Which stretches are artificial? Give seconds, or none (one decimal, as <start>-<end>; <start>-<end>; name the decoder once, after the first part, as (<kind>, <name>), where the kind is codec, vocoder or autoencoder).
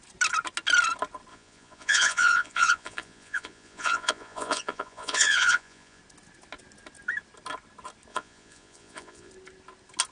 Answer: 1.3-6.0 (vocoder, Vocos); 8.1-9.3